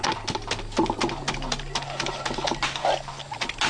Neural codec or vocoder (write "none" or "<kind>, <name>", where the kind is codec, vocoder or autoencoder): none